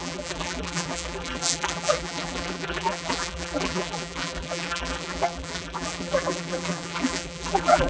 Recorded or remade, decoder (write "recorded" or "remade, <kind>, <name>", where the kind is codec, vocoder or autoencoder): remade, vocoder, BigVGAN v2